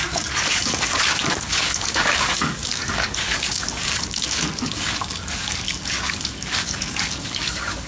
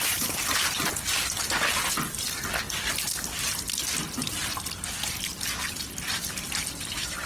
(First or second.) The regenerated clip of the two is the first